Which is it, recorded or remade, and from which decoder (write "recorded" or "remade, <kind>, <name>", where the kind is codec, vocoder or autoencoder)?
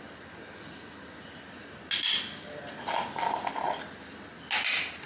recorded